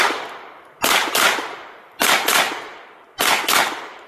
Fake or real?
real